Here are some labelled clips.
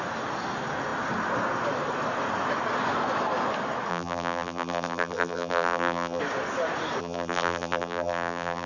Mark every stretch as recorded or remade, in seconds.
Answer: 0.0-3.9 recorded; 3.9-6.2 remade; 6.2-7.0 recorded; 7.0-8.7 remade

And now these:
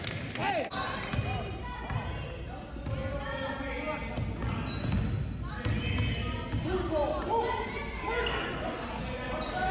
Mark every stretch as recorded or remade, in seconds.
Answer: 0.0-0.4 recorded; 0.4-1.1 remade; 1.1-9.7 recorded

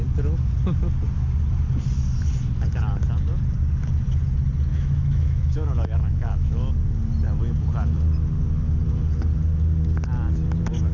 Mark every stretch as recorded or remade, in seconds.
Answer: 0.0-4.7 recorded; 4.7-6.7 remade; 6.7-10.9 recorded

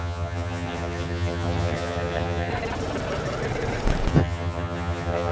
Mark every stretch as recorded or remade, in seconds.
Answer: 0.0-2.5 remade; 2.5-4.1 recorded; 4.1-5.3 remade

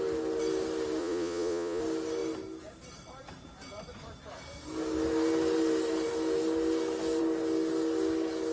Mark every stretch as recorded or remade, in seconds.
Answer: 0.0-1.0 recorded; 1.0-1.8 remade; 1.8-8.5 recorded